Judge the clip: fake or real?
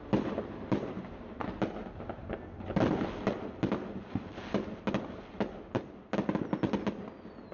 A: real